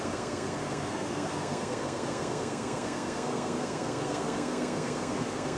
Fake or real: fake